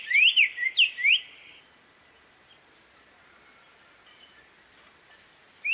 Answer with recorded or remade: recorded